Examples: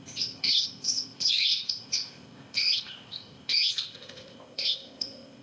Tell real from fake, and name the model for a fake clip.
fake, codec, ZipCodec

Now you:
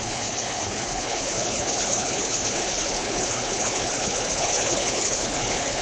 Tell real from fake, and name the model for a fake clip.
fake, codec, HILCodec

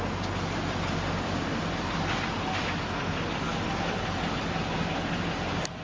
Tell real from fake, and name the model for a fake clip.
real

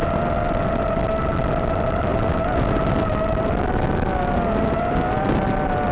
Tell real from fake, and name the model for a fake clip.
real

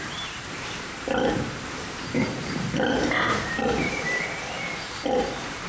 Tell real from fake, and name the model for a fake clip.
fake, vocoder, BigVGAN v2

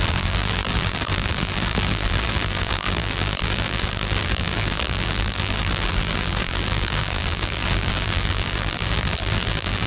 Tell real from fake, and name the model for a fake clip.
fake, vocoder, BigVGAN v2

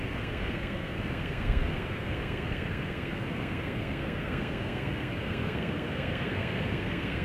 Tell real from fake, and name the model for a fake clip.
fake, codec, SNAC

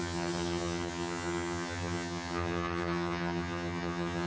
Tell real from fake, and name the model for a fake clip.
fake, vocoder, HiFi-GAN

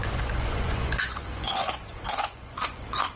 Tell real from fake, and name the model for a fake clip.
fake, vocoder, Vocos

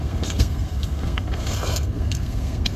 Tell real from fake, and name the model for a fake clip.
fake, codec, SNAC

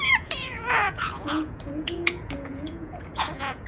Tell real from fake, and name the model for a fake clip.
fake, vocoder, Vocos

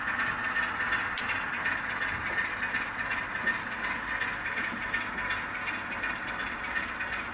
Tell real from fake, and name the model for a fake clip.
real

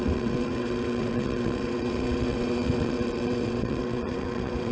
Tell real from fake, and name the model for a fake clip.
fake, vocoder, WaveNeXt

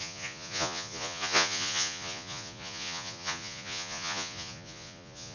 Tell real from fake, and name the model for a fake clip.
fake, vocoder, Vocos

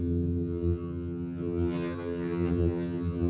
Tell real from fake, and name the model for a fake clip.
fake, vocoder, HiFi-GAN